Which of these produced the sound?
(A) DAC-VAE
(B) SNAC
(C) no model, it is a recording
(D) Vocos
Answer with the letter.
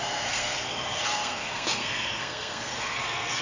B